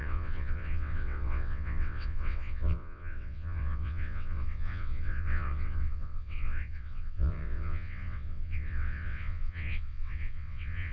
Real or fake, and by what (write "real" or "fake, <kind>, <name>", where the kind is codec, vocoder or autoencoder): fake, vocoder, WaveNeXt